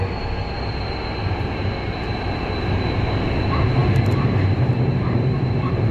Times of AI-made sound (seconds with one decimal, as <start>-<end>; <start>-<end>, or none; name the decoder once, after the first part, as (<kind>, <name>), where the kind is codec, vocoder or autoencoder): 1.2-1.7 (vocoder, BigVGAN v2); 3.8-5.9